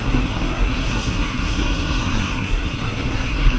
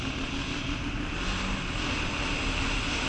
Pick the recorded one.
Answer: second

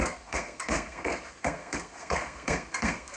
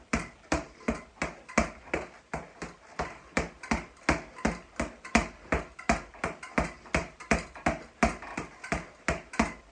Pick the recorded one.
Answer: second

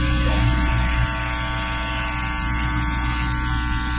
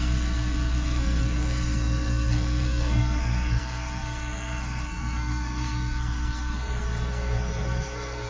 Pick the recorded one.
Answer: first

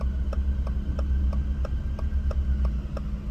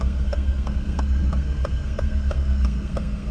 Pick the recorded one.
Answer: first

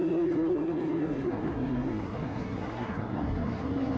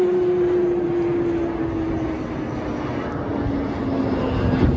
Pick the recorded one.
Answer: second